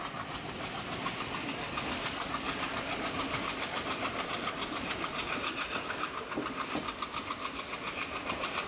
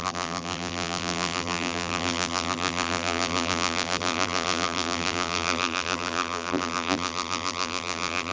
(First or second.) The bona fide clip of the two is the first